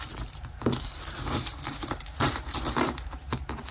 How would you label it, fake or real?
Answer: fake